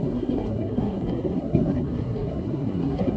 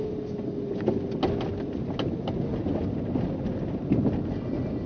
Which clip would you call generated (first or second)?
first